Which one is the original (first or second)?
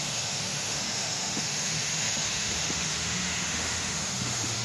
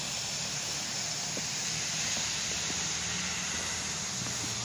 second